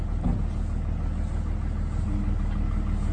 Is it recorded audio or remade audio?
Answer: recorded